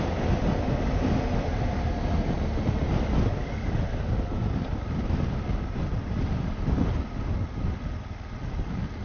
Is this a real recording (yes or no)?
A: yes